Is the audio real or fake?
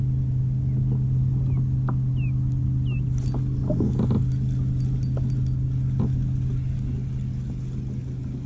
real